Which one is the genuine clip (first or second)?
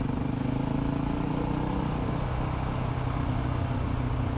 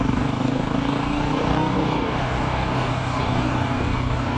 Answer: first